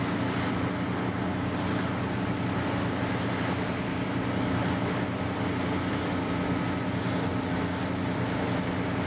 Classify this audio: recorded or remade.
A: recorded